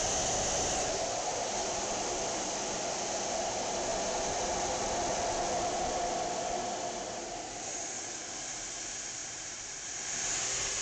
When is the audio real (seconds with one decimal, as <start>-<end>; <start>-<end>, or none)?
0.0-9.2; 9.8-10.8